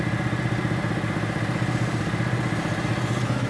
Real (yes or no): yes